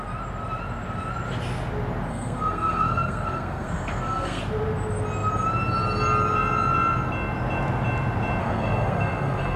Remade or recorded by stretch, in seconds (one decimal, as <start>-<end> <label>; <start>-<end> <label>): 0.0-2.1 recorded; 2.1-4.4 remade; 4.4-8.4 recorded; 8.4-9.6 remade